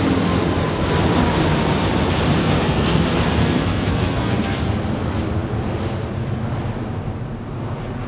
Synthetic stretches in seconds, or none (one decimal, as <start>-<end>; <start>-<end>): 2.4-3.0; 3.4-4.6